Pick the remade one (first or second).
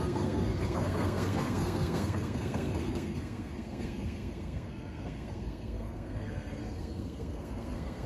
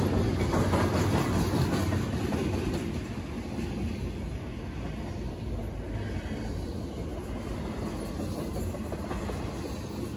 first